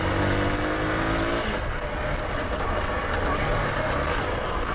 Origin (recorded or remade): recorded